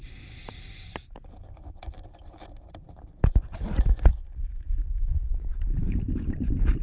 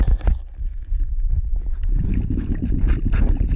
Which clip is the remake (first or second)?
first